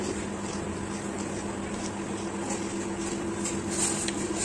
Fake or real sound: real